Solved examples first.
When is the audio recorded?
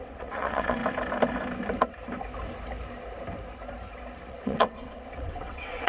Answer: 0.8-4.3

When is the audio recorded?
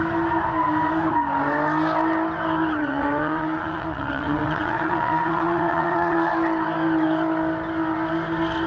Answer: 0.0-2.8; 6.3-8.7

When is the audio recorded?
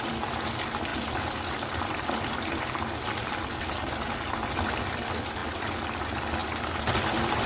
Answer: 0.0-7.5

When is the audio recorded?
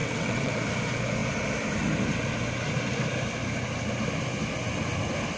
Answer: 0.5-5.4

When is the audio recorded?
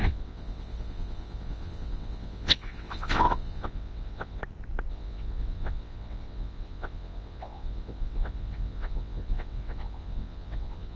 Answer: 4.4-4.9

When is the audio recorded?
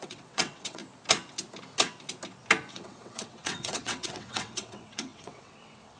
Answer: 0.8-2.7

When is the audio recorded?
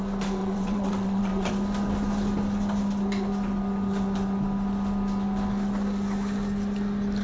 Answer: 0.0-0.4; 1.5-7.2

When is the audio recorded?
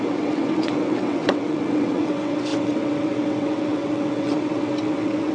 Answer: none